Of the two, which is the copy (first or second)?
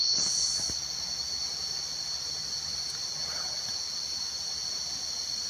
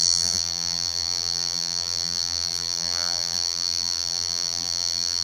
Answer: second